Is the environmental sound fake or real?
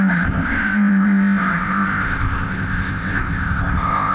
fake